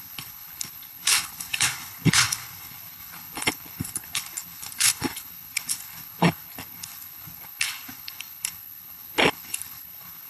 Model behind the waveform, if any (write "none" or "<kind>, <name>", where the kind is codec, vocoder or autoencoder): codec, HILCodec